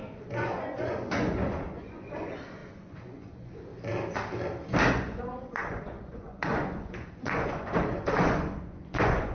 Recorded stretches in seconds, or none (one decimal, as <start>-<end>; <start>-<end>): 3.7-4.9